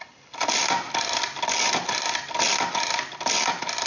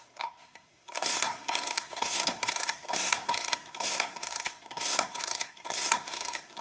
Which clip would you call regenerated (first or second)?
second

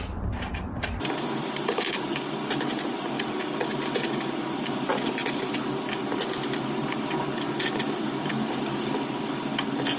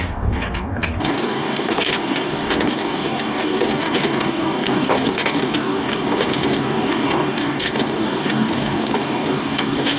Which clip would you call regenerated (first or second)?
second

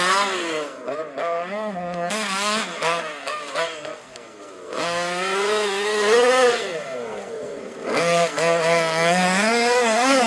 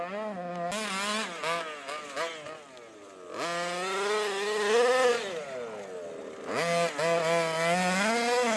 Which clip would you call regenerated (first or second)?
first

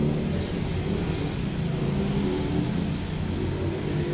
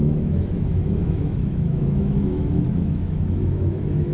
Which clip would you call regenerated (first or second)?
second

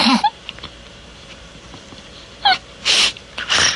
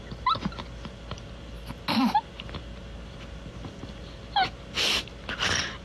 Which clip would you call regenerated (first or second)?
first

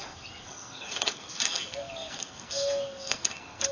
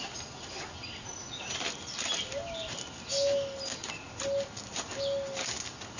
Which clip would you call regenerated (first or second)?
first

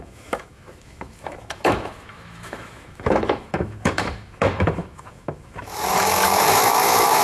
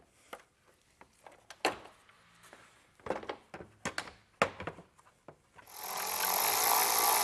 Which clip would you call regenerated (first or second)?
first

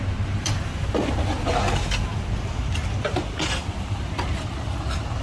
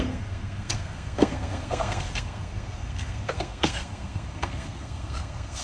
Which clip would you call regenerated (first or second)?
second